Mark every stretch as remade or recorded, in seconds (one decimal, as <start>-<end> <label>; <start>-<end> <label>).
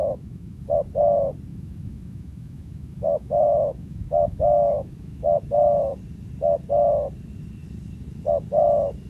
0.0-0.6 remade; 0.6-1.5 recorded; 1.5-5.2 remade; 5.2-9.1 recorded